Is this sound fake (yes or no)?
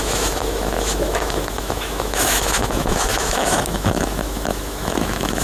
yes